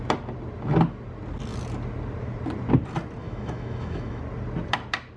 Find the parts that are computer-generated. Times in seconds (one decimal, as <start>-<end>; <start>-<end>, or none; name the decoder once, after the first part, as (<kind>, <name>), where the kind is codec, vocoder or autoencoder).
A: 3.2-4.2 (autoencoder, DAC-VAE)